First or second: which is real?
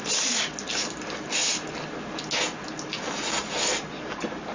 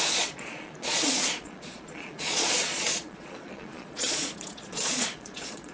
first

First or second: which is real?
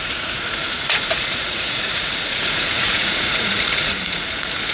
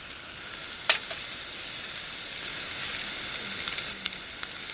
second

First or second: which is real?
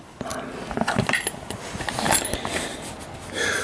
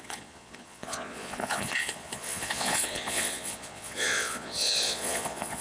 first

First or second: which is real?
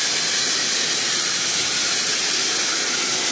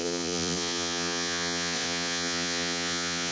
first